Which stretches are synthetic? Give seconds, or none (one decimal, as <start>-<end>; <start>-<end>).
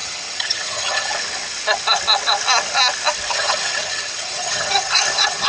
0.0-1.1; 3.3-5.5